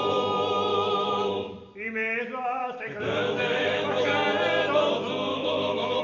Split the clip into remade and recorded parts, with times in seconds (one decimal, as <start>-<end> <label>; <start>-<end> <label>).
0.0-0.7 recorded; 0.7-1.3 remade; 1.3-2.6 recorded; 2.6-4.1 remade; 4.1-5.3 recorded; 5.3-6.0 remade